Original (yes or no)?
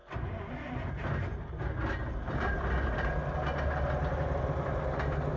yes